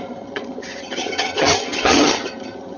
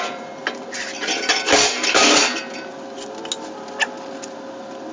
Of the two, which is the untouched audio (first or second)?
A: second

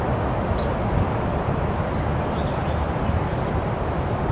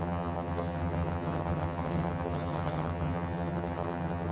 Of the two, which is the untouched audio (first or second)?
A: first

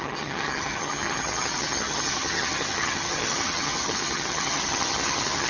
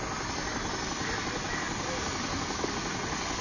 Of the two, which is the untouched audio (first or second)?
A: second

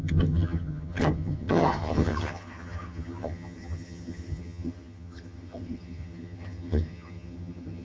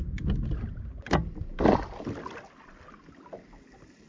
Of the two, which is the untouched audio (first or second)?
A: second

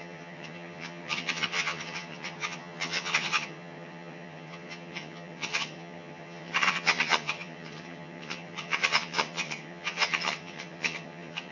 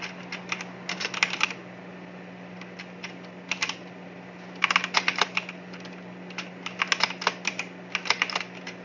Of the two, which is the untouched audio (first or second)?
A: second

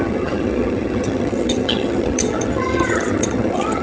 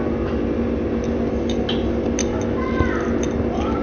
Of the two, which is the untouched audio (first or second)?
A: second